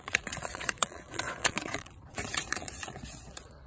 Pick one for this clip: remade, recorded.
remade